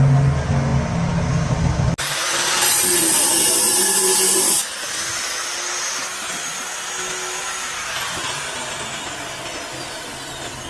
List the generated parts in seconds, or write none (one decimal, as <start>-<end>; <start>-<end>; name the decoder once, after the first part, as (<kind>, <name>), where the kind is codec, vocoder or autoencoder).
none